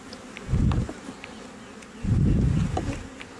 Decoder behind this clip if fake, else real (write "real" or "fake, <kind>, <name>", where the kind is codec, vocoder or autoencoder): real